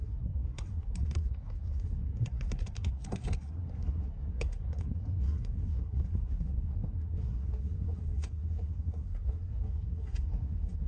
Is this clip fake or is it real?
fake